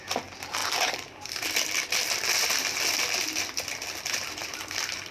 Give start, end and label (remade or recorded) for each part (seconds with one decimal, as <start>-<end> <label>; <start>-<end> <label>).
0.0-5.1 recorded